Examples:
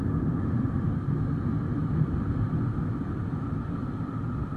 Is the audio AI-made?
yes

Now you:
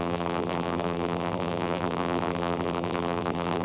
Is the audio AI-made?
yes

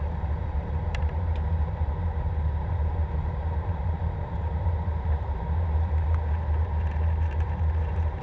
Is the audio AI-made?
yes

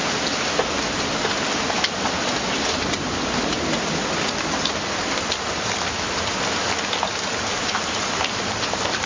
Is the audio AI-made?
no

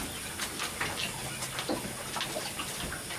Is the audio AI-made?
no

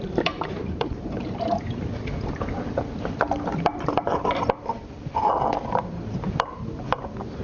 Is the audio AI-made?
yes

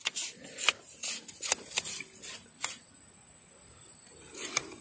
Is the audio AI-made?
no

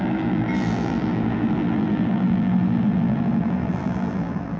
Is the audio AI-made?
yes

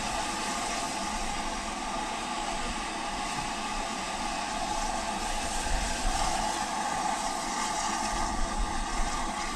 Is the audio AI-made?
no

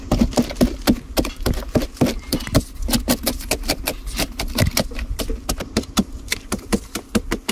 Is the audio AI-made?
no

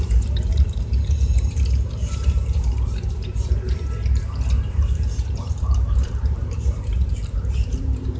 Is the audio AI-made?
yes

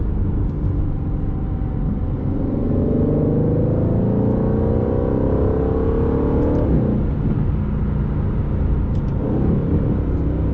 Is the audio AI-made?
no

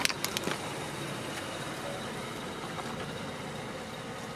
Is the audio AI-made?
no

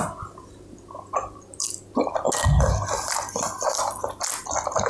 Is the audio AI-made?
no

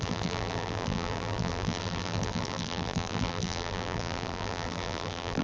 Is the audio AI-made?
yes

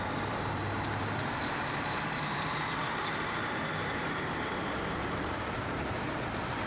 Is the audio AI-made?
yes